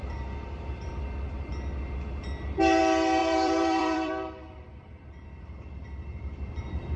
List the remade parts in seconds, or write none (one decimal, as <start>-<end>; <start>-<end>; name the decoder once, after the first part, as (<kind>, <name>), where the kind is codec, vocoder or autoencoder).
0.0-0.9 (vocoder, BigVGAN v2); 3.2-7.0